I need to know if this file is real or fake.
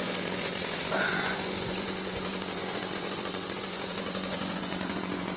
fake